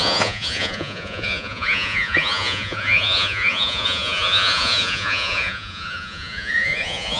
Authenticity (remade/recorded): remade